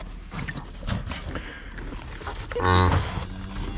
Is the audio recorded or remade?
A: recorded